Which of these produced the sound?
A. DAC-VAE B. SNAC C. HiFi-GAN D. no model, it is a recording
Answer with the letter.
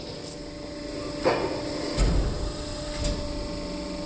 D